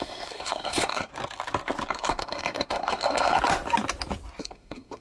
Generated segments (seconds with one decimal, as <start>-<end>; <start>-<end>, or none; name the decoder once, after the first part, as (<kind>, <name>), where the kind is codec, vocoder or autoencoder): 0.0-1.1 (codec, SNAC); 1.9-3.4; 4.4-5.0